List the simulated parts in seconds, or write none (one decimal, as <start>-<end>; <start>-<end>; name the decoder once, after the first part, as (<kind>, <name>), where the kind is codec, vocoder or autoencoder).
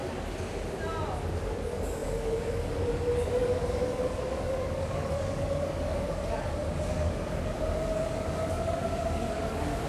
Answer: 1.6-9.9 (codec, DAC)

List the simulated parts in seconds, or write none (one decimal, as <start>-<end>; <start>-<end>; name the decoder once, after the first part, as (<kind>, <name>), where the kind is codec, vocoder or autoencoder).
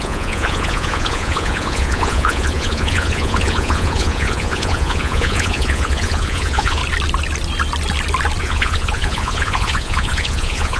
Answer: 0.0-6.8 (vocoder, Vocos); 8.4-10.8